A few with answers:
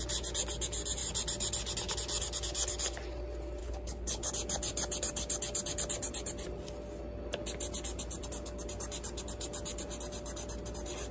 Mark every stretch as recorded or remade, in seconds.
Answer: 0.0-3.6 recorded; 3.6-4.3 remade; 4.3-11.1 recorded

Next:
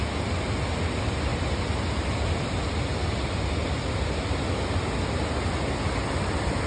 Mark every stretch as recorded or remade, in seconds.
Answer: 0.0-6.7 recorded

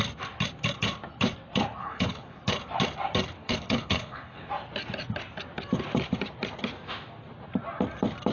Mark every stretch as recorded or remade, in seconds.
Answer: 0.0-1.8 recorded; 1.8-2.4 remade; 2.4-3.4 recorded; 3.4-4.5 remade; 4.5-8.3 recorded

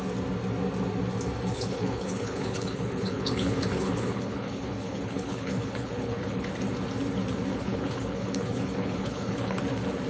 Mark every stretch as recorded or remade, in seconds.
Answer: 0.0-1.5 recorded; 1.5-6.5 remade; 6.5-7.5 recorded; 7.5-9.6 remade; 9.6-10.1 recorded

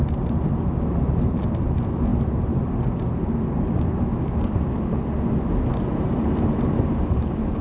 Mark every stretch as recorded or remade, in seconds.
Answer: 0.0-7.6 recorded

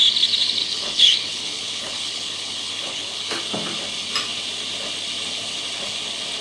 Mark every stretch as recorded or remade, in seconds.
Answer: 0.0-0.6 recorded; 0.6-3.4 remade; 3.4-6.4 recorded